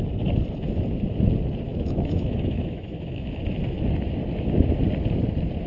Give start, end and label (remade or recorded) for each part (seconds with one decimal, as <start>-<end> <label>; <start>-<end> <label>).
0.0-1.7 recorded; 1.7-3.4 remade; 3.4-5.7 recorded